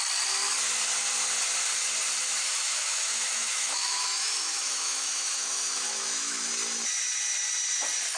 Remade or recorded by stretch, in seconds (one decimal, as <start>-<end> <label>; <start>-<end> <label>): 0.0-2.4 recorded; 2.4-6.5 remade; 6.5-8.2 recorded